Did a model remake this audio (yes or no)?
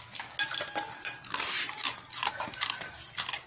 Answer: no